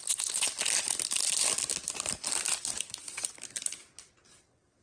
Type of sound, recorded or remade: recorded